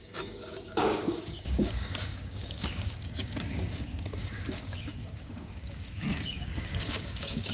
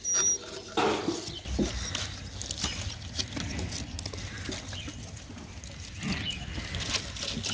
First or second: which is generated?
first